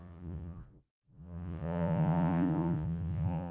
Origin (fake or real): fake